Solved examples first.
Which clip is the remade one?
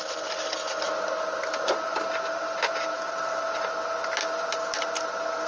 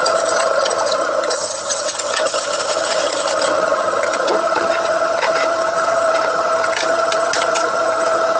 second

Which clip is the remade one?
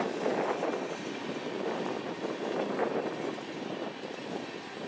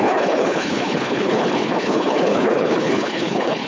second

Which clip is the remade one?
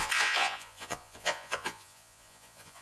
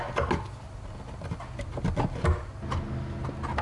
first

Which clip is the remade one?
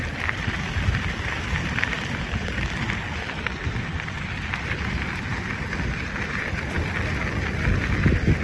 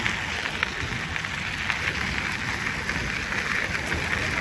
first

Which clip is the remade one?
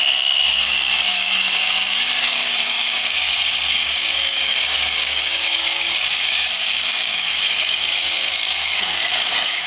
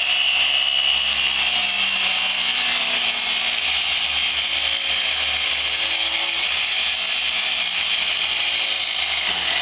first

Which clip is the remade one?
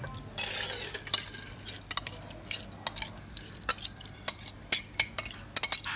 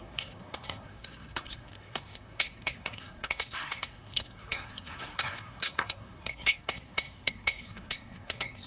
second